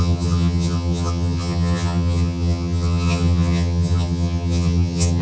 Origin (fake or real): fake